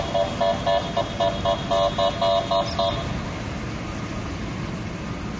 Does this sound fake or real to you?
real